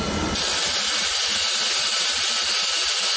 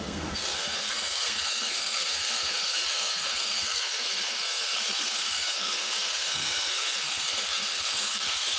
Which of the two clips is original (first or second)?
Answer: first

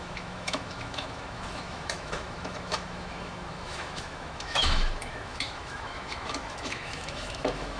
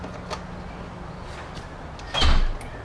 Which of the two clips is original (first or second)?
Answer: second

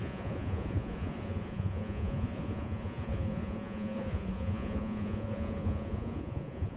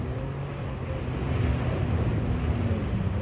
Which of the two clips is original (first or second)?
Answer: second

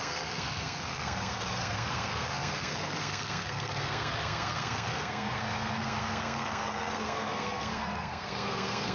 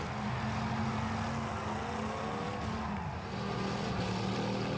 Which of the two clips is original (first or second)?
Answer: second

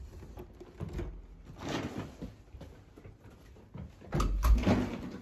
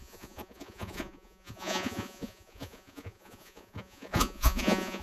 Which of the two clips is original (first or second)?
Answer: first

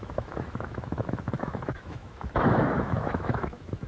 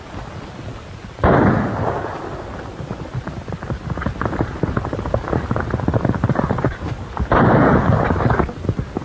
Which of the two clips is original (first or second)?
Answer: second